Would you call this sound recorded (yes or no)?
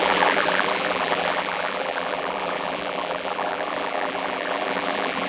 no